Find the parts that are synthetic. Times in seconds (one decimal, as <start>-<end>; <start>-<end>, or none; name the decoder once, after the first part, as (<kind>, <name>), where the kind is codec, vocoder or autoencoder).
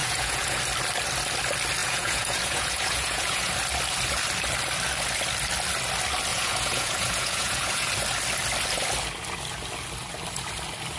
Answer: 0.0-0.6 (vocoder, Vocos); 1.8-3.5; 6.3-7.9